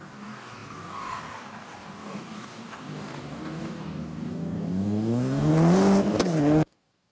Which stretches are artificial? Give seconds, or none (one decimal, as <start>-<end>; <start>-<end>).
0.0-5.5; 6.4-7.1